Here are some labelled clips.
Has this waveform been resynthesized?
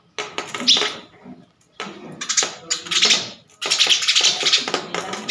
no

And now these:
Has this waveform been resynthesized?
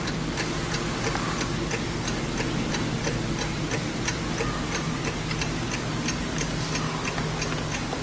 no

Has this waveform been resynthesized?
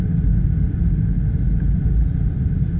no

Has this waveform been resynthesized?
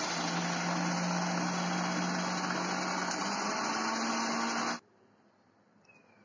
no